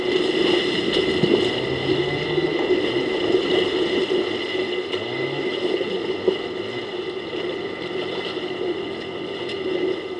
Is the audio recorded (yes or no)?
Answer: yes